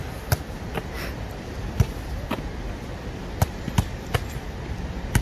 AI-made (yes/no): no